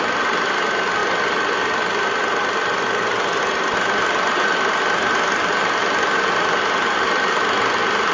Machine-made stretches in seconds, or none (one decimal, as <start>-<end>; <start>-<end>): none